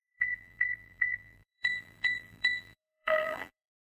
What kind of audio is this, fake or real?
fake